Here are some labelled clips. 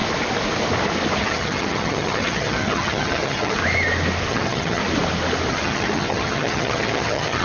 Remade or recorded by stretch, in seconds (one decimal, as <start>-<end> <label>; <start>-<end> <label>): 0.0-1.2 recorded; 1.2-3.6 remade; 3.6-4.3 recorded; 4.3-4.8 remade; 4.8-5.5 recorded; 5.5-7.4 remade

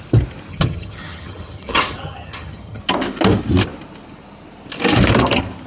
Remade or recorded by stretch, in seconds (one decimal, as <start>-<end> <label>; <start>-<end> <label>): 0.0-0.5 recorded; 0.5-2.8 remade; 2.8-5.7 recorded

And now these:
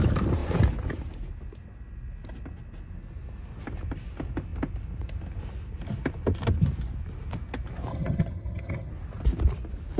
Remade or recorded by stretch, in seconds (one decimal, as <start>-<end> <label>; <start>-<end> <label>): 0.0-7.9 recorded; 7.9-8.9 remade; 8.9-10.0 recorded